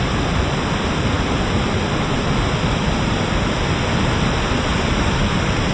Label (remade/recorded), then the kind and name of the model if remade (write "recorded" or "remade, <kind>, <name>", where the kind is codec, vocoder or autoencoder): remade, vocoder, BigVGAN v2